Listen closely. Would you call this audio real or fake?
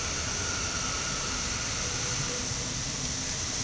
fake